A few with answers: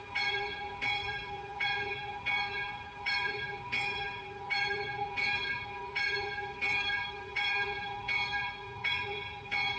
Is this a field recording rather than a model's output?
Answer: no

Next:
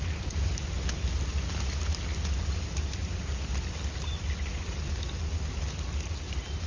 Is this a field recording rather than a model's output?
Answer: yes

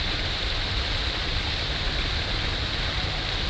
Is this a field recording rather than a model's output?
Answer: yes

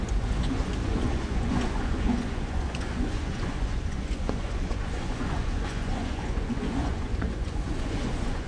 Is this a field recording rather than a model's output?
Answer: no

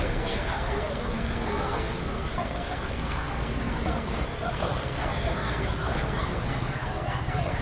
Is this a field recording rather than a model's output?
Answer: no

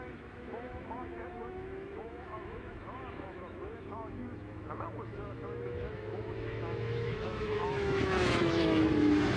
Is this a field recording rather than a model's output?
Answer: no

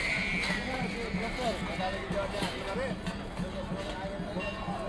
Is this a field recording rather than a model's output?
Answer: yes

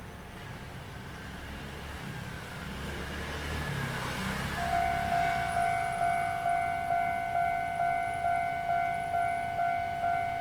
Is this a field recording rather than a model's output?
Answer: yes